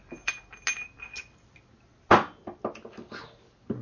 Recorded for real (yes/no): yes